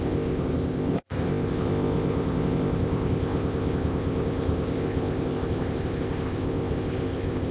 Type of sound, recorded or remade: remade